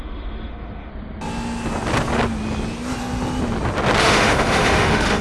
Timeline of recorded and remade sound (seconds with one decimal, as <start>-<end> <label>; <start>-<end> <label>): 0.0-0.9 remade; 0.9-4.0 recorded; 4.0-5.2 remade